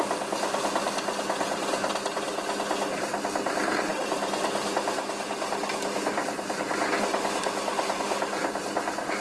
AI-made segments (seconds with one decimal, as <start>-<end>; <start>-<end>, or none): none